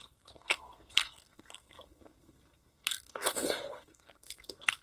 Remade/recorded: remade